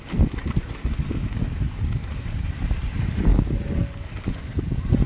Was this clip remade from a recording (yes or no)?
no